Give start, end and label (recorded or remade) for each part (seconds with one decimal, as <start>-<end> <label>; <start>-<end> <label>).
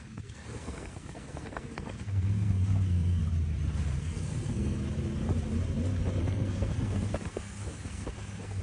0.0-3.2 remade; 3.2-4.0 recorded; 4.0-4.8 remade; 4.8-6.2 recorded; 6.2-8.6 remade